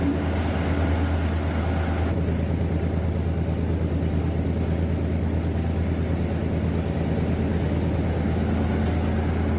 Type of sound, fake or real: real